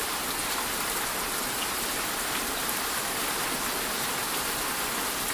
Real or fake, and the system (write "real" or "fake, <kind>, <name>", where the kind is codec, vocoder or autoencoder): real